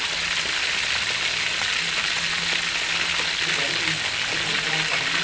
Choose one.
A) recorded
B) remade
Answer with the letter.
A